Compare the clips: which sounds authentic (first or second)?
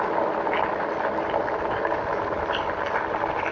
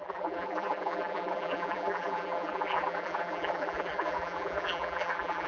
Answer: first